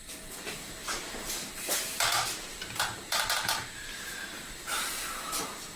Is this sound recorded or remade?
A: remade